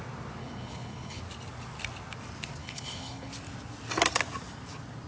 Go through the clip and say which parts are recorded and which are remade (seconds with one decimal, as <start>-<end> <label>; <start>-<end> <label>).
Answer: 0.0-0.4 recorded; 0.4-1.2 remade; 1.2-2.6 recorded; 2.6-3.3 remade; 3.3-5.1 recorded